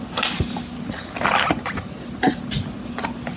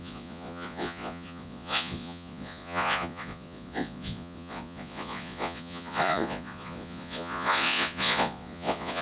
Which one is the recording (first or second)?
first